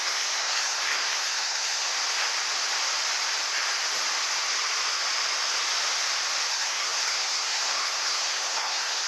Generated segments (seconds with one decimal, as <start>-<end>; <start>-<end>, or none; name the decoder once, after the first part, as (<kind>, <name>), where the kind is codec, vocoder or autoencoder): 0.0-1.9 (codec, SNAC); 6.5-9.1